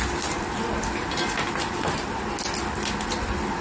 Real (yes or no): yes